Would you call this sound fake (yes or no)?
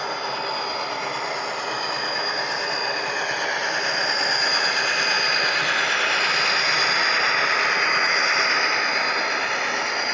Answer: no